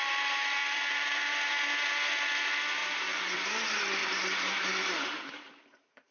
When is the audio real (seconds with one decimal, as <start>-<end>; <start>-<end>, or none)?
0.0-0.6; 1.3-2.8; 3.4-4.0